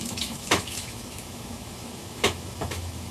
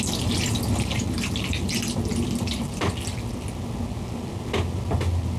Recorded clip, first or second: second